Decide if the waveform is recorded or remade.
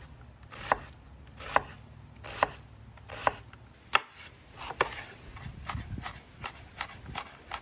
recorded